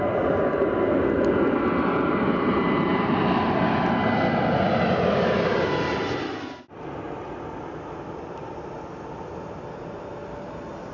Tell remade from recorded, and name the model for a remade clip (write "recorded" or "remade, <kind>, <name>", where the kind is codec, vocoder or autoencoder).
recorded